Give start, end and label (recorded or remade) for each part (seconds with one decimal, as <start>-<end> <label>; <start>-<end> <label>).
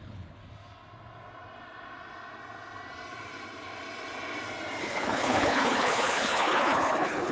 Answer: 0.0-0.4 remade; 0.4-4.8 recorded; 4.8-7.3 remade